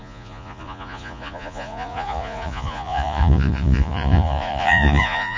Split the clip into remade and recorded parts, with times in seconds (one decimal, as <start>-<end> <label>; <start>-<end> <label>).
0.0-5.4 remade